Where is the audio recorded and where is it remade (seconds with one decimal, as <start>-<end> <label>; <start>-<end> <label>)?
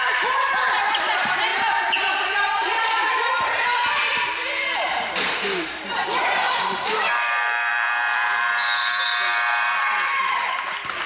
0.0-11.1 remade